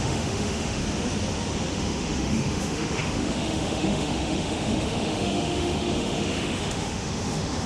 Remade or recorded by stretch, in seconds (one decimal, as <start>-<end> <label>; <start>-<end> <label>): 0.0-0.8 remade; 0.8-1.7 recorded; 1.7-7.7 remade